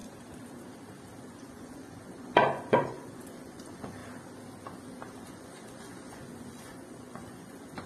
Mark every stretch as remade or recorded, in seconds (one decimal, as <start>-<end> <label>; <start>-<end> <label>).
0.0-1.2 recorded; 1.2-4.0 remade; 4.0-5.2 recorded; 5.2-7.9 remade